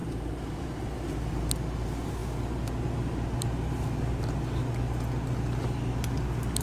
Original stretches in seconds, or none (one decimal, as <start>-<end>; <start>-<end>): 1.3-6.6